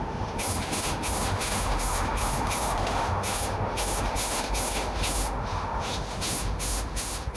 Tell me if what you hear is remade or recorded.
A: remade